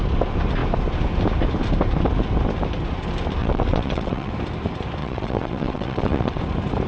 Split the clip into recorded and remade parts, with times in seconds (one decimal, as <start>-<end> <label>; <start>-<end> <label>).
0.0-3.4 recorded; 3.4-4.3 remade; 4.3-5.0 recorded; 5.0-6.4 remade; 6.4-6.9 recorded